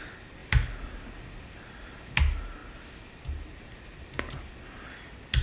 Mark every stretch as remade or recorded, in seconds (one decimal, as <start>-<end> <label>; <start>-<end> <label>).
0.0-5.4 recorded